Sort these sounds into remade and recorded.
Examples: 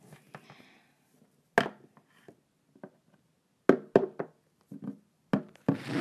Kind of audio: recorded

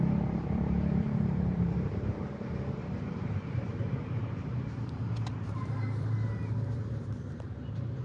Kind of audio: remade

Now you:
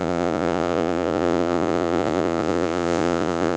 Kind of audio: remade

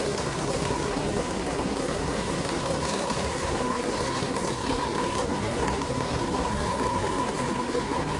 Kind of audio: remade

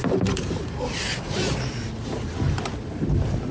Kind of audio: recorded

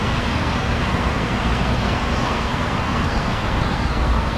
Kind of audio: remade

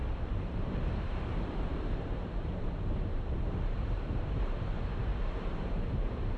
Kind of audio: remade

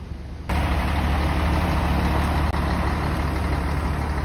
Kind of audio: recorded